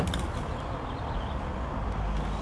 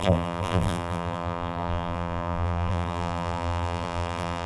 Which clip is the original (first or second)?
first